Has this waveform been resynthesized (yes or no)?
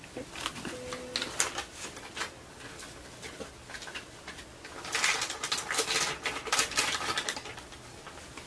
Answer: no